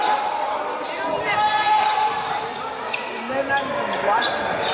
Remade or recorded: recorded